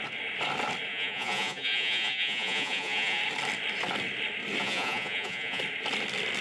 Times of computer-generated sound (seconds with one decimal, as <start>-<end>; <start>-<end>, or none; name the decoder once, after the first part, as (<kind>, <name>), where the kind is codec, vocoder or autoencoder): 0.9-3.2 (vocoder, Vocos); 4.6-5.6

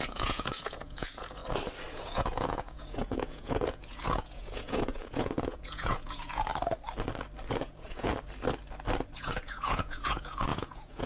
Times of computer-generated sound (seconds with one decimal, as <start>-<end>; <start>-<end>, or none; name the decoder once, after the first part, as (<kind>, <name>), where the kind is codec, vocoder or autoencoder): 0.0-1.4 (vocoder, Vocos); 1.9-6.5; 7.5-8.1; 9.2-11.1

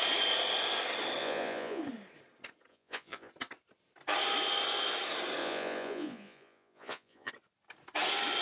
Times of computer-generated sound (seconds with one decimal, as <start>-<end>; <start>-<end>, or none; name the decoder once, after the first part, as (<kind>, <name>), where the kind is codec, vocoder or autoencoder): 1.2-1.8 (vocoder, Vocos); 2.7-3.3; 5.4-7.3

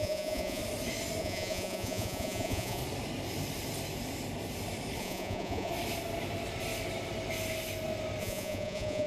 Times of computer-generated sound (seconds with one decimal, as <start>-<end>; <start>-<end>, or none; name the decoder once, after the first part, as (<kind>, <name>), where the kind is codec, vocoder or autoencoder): 0.0-0.6 (vocoder, Vocos); 1.2-2.8; 5.0-5.7; 8.2-9.1